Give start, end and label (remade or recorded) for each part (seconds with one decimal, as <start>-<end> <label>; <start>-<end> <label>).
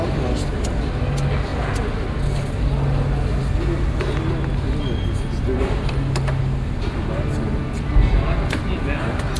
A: 0.0-9.4 recorded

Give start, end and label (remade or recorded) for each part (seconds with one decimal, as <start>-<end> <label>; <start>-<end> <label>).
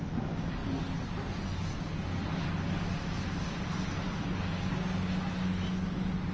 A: 0.0-6.3 recorded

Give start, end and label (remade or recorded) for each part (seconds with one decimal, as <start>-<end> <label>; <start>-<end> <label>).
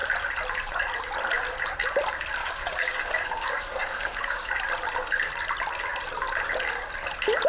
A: 0.0-2.4 recorded; 2.4-4.5 remade; 4.5-7.5 recorded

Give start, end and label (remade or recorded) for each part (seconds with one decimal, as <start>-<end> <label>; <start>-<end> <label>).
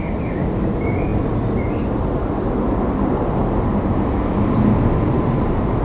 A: 0.0-5.8 recorded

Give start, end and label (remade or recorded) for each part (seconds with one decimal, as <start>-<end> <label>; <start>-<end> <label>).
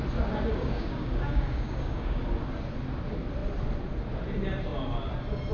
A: 0.0-0.5 recorded; 0.5-2.2 remade; 2.2-5.5 recorded